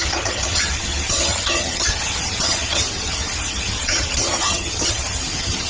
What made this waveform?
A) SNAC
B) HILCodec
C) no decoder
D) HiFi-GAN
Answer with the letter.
D